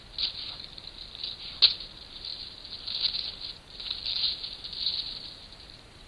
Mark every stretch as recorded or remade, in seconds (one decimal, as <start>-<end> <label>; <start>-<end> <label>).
0.0-6.1 recorded